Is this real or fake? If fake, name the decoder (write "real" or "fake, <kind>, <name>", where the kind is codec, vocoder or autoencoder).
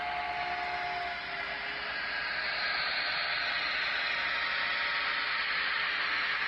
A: real